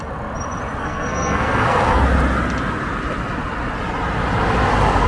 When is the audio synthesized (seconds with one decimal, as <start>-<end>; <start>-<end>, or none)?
0.8-2.0